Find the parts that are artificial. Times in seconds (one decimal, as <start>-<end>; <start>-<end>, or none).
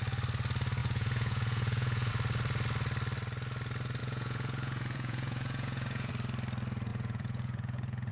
0.8-2.1; 4.0-6.1; 6.9-8.1